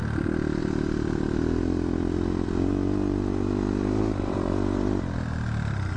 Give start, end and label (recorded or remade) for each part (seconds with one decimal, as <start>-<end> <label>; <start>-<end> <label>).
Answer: 0.0-6.0 recorded